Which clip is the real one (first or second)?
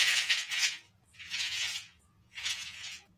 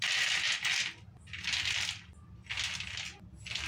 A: second